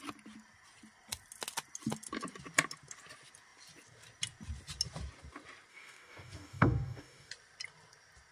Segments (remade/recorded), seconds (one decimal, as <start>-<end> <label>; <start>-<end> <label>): 0.0-5.7 recorded; 5.7-7.3 remade; 7.3-8.3 recorded